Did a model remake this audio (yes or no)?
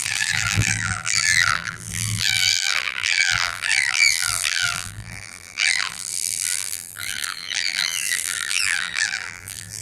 yes